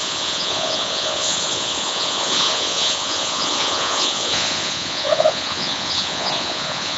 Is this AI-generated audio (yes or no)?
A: yes